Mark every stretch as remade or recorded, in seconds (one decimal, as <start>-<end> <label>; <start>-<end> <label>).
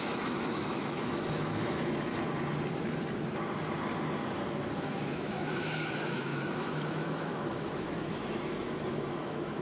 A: 0.0-2.1 remade; 2.1-4.8 recorded; 4.8-9.6 remade